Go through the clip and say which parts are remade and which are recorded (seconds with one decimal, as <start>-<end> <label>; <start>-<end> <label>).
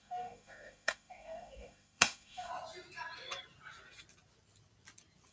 0.0-2.5 remade; 2.5-5.3 recorded